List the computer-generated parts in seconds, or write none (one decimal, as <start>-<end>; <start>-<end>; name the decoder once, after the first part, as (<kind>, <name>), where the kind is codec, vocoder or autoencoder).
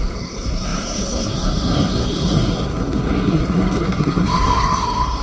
0.0-5.2 (codec, SNAC)